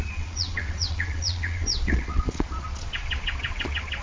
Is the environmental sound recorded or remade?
remade